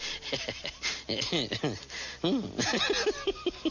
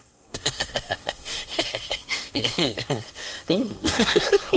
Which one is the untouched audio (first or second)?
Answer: first